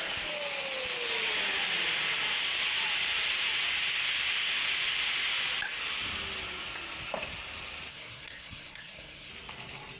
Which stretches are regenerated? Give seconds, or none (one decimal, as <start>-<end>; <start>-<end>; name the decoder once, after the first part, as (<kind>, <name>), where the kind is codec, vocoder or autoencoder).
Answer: 7.9-9.3 (codec, SNAC)